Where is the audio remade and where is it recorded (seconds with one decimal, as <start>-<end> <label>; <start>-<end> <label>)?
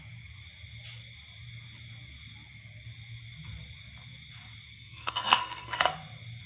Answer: 0.0-4.7 recorded; 4.7-5.9 remade; 5.9-6.5 recorded